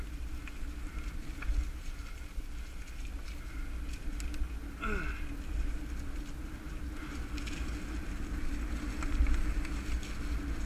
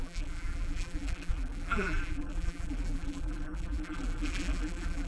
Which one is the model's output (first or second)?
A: second